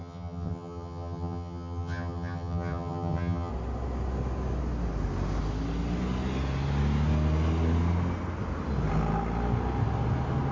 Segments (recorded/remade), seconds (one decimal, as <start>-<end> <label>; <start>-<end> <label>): 0.0-3.5 remade; 3.5-10.5 recorded